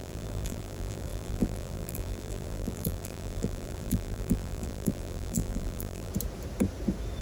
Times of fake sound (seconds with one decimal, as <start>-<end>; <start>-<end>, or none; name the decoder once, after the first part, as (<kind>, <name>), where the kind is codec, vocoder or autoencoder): 0.0-6.1 (vocoder, BigVGAN v2)